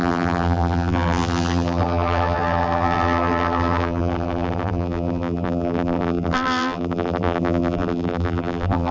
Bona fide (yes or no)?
no